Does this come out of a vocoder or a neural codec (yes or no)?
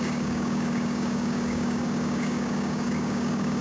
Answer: yes